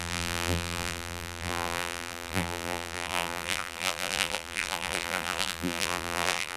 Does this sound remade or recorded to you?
remade